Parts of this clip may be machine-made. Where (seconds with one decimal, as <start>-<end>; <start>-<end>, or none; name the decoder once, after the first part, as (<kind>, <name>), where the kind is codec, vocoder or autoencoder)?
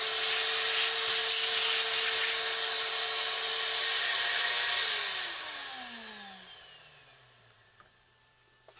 none